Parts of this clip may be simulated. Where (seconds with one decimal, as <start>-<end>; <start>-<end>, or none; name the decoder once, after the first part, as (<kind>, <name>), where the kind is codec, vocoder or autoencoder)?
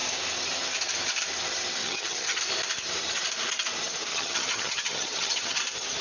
1.8-2.4 (vocoder, HiFi-GAN); 4.1-5.6